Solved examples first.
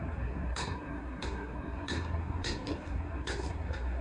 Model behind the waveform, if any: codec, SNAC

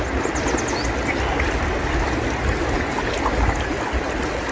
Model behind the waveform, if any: none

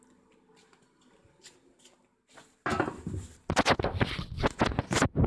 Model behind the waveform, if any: none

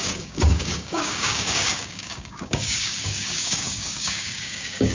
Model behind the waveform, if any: codec, DAC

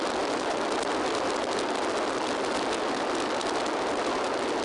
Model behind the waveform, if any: none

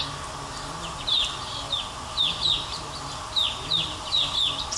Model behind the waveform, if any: none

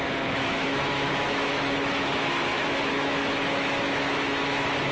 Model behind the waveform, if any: autoencoder, DAC-VAE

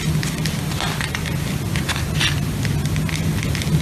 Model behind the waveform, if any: none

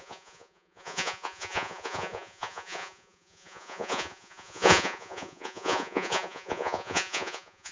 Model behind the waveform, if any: vocoder, Vocos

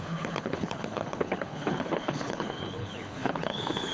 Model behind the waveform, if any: codec, HILCodec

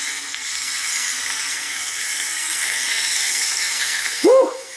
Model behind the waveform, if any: codec, SNAC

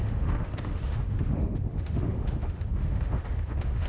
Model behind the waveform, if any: autoencoder, DAC-VAE